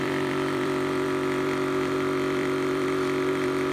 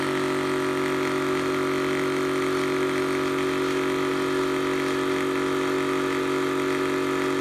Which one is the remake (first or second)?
first